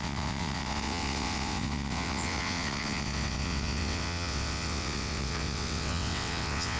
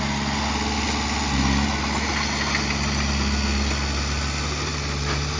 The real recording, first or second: second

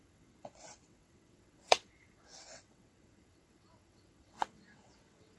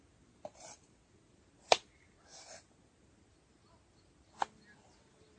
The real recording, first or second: second